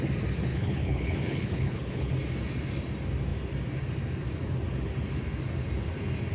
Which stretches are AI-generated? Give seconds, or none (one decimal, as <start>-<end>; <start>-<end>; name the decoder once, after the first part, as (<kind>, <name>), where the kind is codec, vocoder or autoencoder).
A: 0.5-2.1 (codec, HILCodec)